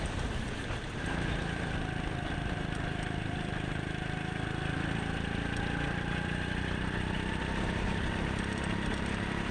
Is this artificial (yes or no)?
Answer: no